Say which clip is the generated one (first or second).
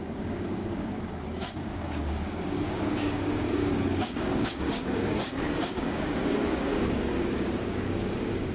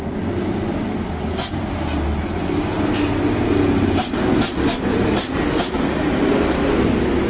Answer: first